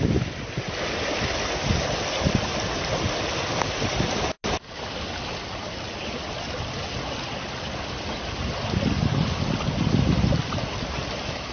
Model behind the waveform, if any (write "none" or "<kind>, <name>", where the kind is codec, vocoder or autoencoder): none